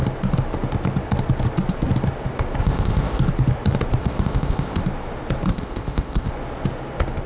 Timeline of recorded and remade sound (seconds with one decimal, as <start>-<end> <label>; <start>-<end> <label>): 0.0-2.6 recorded; 2.6-3.2 remade; 3.2-4.0 recorded; 4.0-4.8 remade; 4.8-5.5 recorded; 5.5-6.3 remade; 6.3-7.3 recorded

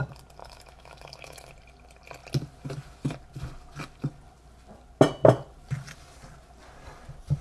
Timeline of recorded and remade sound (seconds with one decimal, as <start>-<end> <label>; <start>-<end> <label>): 0.0-0.4 recorded; 0.4-1.5 remade; 1.5-7.4 recorded

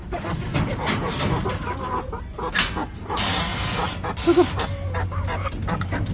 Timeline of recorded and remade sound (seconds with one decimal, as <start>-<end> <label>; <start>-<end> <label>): 0.0-6.1 recorded